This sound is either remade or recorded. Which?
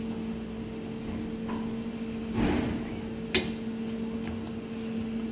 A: recorded